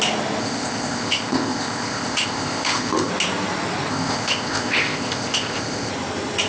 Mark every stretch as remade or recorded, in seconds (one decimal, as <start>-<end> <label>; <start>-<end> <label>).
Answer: 0.0-0.4 recorded; 0.4-3.1 remade; 3.1-3.9 recorded; 3.9-5.9 remade; 5.9-6.5 recorded